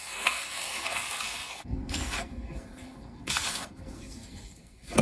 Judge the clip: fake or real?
fake